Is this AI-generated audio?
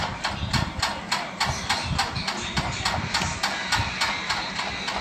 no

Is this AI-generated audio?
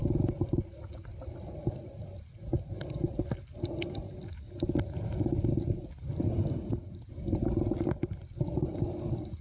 no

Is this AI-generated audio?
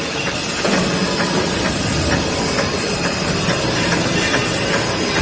yes